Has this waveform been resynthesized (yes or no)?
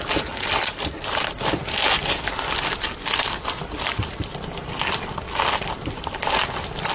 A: yes